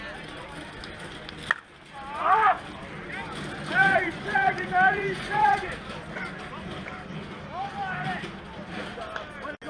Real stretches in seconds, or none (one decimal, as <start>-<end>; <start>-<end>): 0.0-3.8; 5.7-9.7